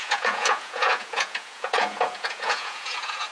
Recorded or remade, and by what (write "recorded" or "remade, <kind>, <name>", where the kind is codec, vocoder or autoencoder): remade, vocoder, Vocos